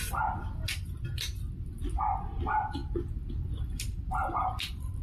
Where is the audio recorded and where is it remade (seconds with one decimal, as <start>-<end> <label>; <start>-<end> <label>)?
0.0-5.0 recorded